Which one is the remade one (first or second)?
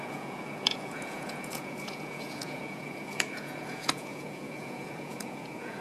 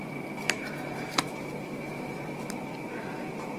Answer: first